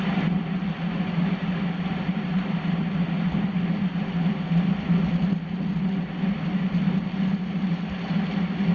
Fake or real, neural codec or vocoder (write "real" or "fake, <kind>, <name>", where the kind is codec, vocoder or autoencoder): real